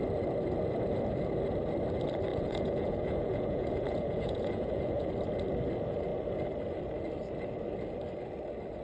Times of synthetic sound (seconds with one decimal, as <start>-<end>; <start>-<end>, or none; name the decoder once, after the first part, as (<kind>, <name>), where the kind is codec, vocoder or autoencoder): 2.3-5.1 (vocoder, Vocos)